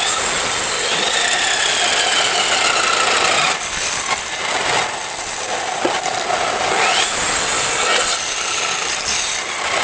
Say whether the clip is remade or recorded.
recorded